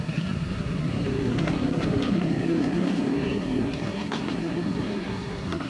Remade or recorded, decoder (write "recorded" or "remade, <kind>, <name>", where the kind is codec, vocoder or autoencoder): remade, codec, SNAC